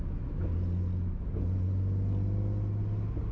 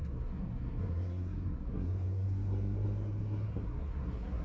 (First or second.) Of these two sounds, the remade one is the second